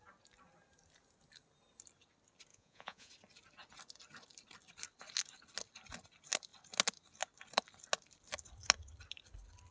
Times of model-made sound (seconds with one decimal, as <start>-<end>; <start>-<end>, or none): 2.5-3.1